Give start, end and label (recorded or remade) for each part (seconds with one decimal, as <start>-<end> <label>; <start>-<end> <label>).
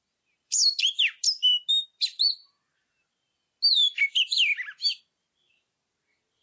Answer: 0.0-6.4 recorded